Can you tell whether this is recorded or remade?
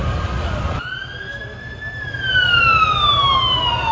recorded